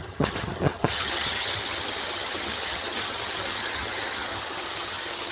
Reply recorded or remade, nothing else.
remade